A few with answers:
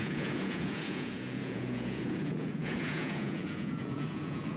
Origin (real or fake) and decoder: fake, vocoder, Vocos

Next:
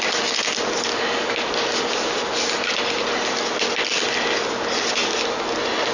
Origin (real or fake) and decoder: real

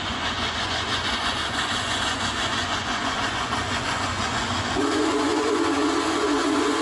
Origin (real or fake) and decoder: fake, vocoder, Vocos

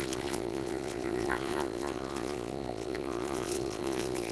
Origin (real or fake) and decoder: fake, vocoder, Vocos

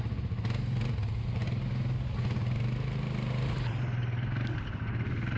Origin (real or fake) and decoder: real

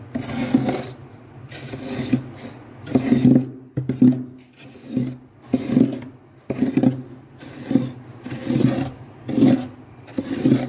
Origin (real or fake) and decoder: real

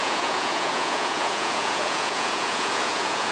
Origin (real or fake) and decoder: fake, vocoder, Vocos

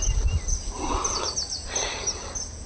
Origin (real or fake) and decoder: real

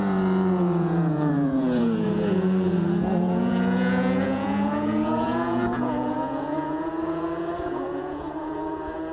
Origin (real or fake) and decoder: fake, vocoder, Vocos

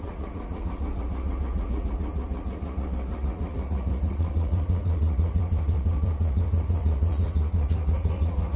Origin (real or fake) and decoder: fake, vocoder, Vocos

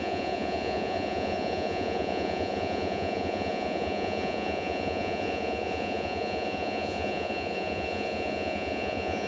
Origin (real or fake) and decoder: fake, vocoder, Vocos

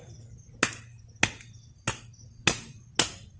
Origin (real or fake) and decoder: real